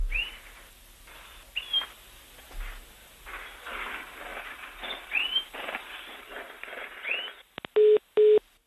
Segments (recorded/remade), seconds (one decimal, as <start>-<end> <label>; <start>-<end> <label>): 0.0-4.3 recorded; 4.3-7.0 remade; 7.0-8.7 recorded